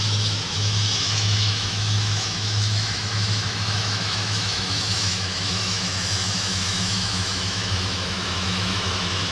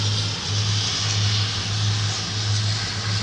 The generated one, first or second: first